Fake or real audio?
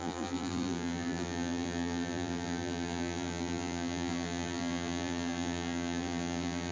fake